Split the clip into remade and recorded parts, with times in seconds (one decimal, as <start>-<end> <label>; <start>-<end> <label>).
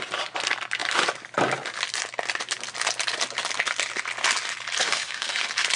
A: 0.0-4.8 recorded; 4.8-5.3 remade; 5.3-5.8 recorded